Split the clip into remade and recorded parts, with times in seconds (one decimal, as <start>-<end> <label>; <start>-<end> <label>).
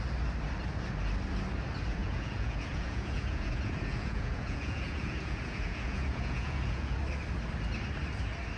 0.0-2.0 recorded; 2.0-7.0 remade; 7.0-8.6 recorded